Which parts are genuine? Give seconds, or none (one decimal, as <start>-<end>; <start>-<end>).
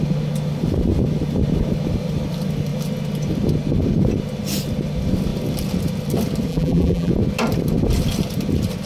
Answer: 0.0-6.5; 7.1-8.9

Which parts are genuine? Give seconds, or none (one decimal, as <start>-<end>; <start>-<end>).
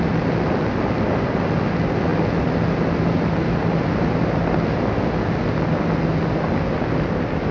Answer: 0.0-7.5